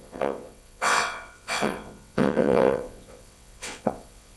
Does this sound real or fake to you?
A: fake